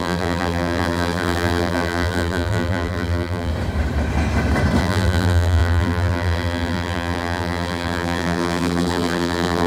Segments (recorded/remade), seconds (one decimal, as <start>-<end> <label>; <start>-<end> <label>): 0.0-3.5 remade; 3.5-4.8 recorded; 4.8-9.7 remade